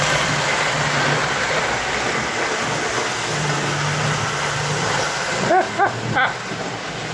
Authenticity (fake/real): real